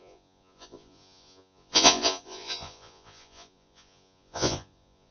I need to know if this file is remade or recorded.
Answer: remade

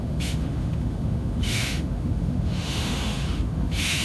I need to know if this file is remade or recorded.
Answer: remade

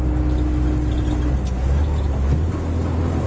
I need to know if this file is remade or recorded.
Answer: recorded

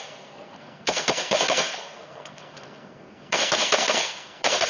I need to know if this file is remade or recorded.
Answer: remade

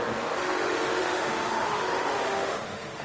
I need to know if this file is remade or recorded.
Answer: remade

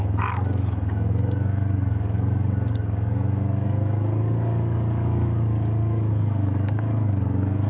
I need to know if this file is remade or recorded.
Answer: remade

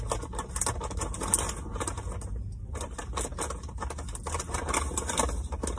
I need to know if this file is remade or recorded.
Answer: recorded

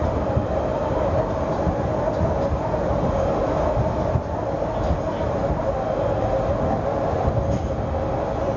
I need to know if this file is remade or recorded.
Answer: recorded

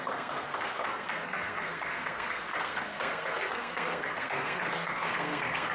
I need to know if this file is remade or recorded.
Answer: remade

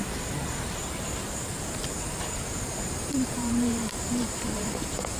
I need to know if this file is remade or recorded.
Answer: remade